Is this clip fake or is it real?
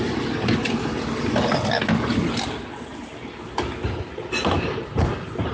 real